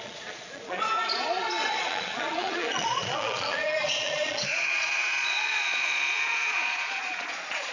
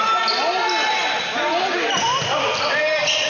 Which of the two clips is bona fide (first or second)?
second